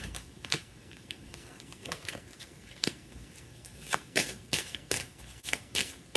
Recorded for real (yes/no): no